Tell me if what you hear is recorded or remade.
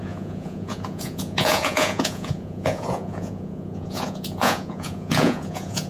remade